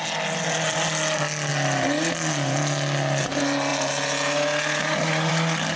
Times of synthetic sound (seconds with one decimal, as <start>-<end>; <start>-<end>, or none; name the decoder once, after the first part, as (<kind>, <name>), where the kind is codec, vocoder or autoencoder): none